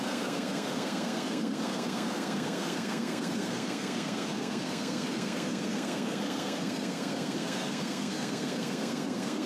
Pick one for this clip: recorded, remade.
remade